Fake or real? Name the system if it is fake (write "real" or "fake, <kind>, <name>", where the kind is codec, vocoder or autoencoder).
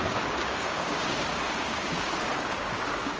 fake, codec, DAC